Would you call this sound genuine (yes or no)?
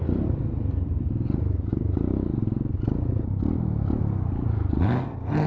yes